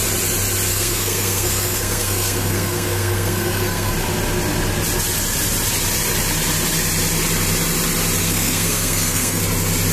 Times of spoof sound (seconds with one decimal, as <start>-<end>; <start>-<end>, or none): 0.7-3.9; 8.2-9.4